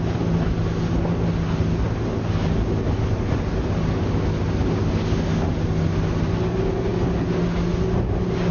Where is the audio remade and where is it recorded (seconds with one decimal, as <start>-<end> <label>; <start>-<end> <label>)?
0.0-8.5 recorded